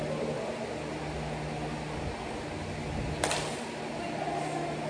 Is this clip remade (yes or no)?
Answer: no